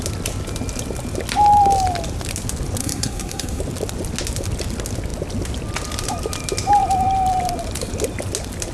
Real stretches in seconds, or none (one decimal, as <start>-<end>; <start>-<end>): 0.0-2.8; 3.6-8.7